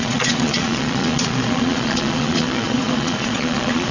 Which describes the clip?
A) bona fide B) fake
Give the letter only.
B